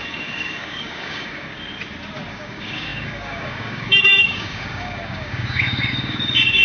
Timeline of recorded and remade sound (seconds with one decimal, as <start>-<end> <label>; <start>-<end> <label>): 0.0-1.5 remade; 1.5-2.3 recorded; 2.3-6.6 remade